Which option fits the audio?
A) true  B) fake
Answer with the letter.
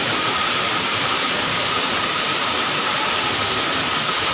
B